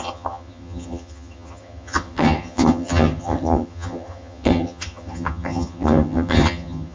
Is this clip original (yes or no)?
no